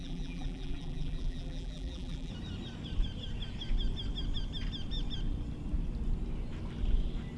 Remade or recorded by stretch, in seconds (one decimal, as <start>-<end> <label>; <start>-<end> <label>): 0.0-2.3 remade; 2.3-7.4 recorded